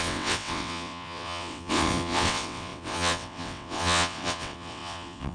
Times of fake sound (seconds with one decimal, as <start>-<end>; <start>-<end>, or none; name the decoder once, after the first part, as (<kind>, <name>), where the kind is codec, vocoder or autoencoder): 0.0-5.3 (vocoder, WaveNeXt)